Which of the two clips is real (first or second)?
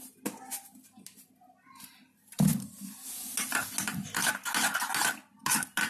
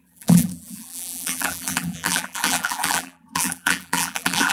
first